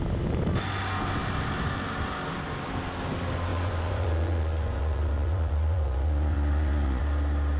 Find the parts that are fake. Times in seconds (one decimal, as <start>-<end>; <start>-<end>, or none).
3.5-7.0